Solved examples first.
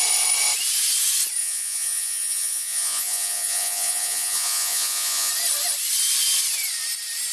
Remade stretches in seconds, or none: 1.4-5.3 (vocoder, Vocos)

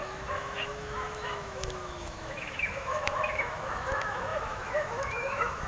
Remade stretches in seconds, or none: 0.0-5.7 (autoencoder, DAC-VAE)

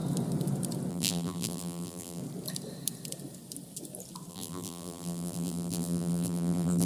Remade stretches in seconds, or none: 0.9-2.2 (vocoder, BigVGAN v2); 4.3-6.9

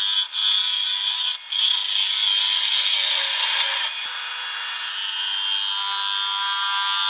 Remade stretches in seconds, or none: none

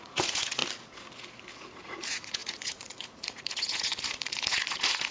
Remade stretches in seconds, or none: 0.0-0.6 (vocoder, Vocos); 1.6-5.1

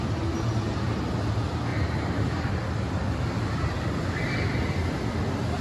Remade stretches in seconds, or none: 1.7-2.4 (vocoder, BigVGAN v2)

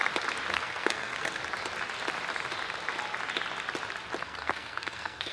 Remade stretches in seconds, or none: 0.5-1.4 (codec, SNAC); 4.2-5.3

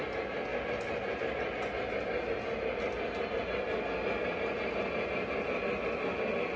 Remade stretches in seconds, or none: none